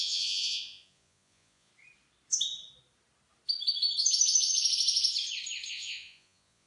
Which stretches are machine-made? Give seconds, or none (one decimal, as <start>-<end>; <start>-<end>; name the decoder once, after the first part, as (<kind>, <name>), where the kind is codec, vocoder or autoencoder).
0.0-1.7 (vocoder, Vocos); 5.7-6.7